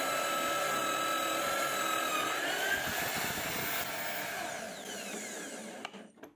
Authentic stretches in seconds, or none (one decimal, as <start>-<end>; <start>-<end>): 0.0-6.4